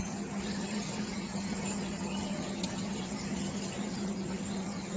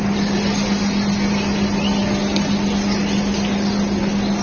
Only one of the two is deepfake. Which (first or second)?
first